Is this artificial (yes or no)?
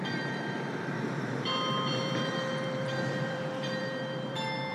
yes